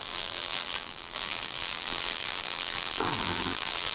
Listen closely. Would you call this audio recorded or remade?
remade